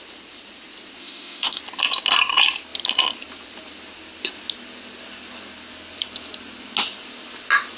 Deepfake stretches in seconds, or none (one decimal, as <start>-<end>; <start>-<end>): 1.0-1.6